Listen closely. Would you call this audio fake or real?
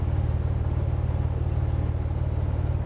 real